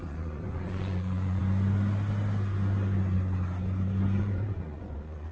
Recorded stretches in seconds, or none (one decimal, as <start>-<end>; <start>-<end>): 1.4-4.2